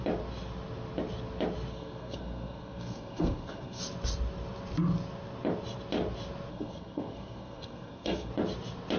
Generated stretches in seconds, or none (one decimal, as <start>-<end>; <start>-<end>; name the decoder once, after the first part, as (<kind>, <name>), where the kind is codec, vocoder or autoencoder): 1.7-3.8 (codec, SNAC); 6.5-8.3